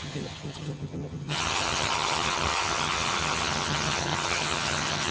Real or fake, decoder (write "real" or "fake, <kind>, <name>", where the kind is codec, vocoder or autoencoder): fake, vocoder, HiFi-GAN